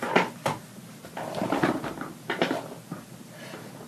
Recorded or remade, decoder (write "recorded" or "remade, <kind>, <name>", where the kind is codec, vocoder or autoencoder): recorded